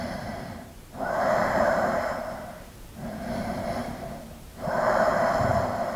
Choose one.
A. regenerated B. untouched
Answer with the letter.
A